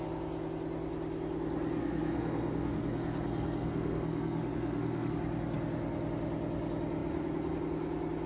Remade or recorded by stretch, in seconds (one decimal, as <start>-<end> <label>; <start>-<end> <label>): 0.0-1.8 recorded; 1.8-5.1 remade; 5.1-8.3 recorded